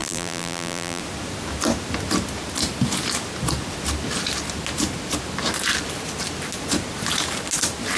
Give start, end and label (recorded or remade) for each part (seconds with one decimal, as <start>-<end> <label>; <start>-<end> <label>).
0.0-1.0 remade; 1.0-8.0 recorded